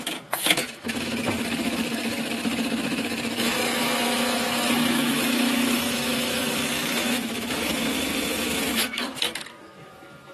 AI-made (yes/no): yes